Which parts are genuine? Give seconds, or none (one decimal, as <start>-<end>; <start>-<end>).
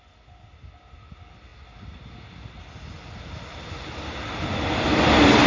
0.0-5.5